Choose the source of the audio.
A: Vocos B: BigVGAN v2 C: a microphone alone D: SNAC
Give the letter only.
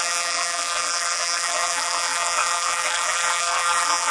B